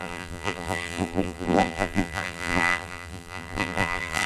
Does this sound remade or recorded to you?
remade